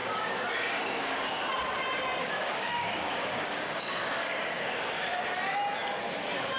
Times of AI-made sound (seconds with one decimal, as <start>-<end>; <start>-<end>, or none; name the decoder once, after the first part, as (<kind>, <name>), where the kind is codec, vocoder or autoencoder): 0.0-1.4 (codec, DAC); 2.2-5.2